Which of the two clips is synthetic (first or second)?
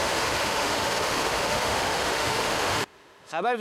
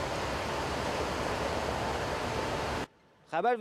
first